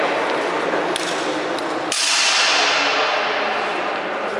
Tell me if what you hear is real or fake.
real